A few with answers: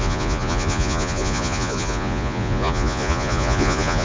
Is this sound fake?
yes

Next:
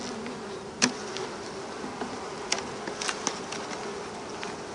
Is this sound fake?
no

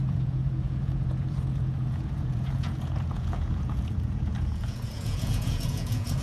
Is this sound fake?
yes